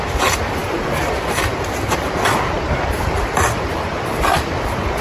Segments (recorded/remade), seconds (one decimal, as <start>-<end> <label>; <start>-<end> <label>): 0.0-5.0 recorded